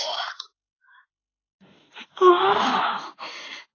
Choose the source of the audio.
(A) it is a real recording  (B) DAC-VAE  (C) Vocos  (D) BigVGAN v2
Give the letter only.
B